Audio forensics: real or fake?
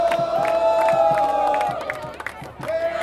real